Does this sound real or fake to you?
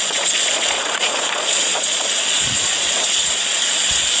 fake